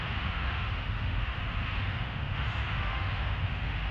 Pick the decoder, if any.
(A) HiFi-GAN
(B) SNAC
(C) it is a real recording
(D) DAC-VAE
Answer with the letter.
D